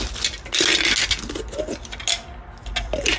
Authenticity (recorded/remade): recorded